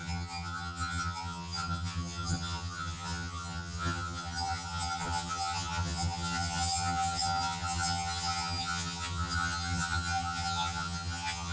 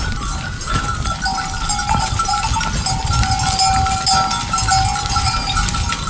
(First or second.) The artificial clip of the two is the first